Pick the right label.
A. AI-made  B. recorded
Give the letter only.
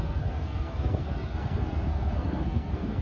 A